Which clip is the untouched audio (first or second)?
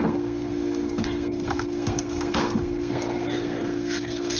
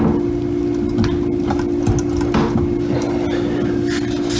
second